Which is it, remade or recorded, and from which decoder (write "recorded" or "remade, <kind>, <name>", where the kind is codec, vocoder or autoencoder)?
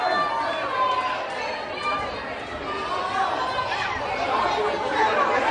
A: recorded